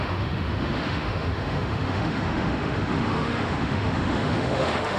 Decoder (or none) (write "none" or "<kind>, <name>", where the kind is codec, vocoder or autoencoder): autoencoder, DAC-VAE